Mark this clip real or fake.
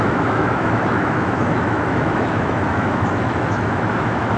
fake